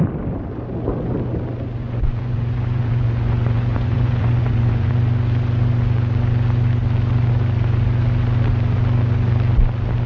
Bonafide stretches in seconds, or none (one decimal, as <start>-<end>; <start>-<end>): 0.0-1.8; 4.9-10.1